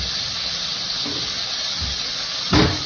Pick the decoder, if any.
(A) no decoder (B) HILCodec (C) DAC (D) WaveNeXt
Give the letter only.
A